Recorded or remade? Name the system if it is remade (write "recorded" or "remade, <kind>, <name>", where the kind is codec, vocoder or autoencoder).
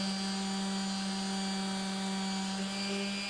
recorded